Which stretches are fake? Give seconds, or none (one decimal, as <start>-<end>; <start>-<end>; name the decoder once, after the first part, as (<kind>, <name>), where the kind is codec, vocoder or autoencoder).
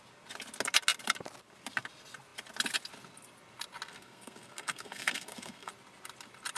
3.9-5.7 (codec, SNAC)